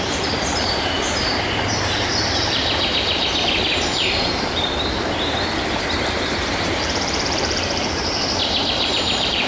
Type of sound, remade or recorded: remade